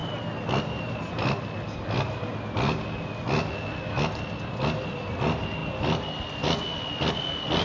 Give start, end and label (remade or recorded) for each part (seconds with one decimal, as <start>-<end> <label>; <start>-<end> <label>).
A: 0.0-7.6 recorded